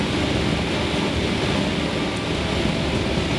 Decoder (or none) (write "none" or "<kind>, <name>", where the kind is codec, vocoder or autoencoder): none